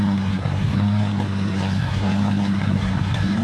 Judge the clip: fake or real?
fake